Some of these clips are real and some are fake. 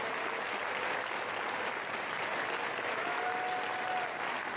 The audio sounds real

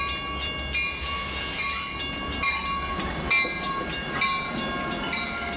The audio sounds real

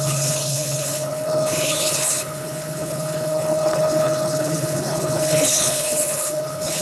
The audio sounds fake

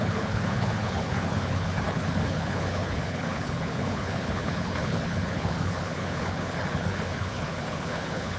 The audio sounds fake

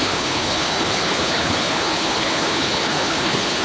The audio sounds fake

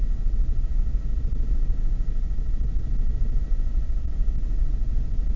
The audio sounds real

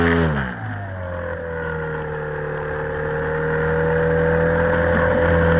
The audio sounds real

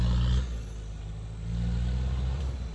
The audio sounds real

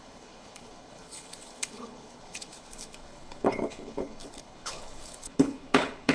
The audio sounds fake